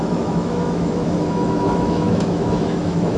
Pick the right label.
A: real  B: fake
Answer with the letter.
B